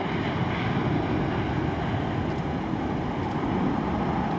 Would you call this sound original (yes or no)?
yes